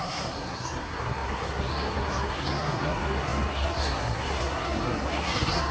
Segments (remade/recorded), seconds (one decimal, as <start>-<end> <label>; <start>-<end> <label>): 0.0-5.7 remade